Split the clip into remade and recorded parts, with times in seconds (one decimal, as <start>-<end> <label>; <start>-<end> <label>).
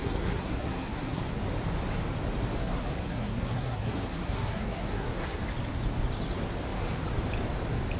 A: 0.0-1.2 remade; 1.2-2.6 recorded; 2.6-5.4 remade; 5.4-8.0 recorded